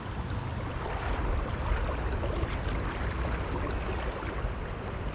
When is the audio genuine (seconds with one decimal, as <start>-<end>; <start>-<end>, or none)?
1.5-4.1

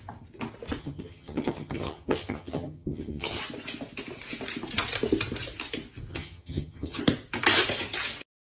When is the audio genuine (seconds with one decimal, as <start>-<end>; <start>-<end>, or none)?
0.0-0.8; 3.4-6.1; 7.0-8.4

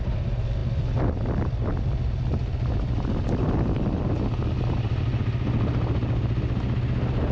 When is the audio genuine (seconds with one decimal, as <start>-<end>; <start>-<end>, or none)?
0.0-7.3

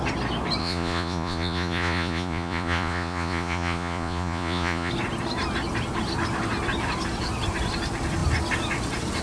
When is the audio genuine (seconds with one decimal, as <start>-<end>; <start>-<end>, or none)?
0.0-0.6; 4.9-9.2

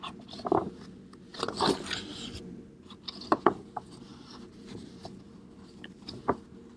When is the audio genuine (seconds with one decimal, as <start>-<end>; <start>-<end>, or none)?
0.0-6.8

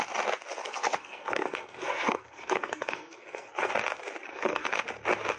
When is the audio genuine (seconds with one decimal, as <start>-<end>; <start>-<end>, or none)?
0.0-0.6; 3.7-4.3; 4.8-5.4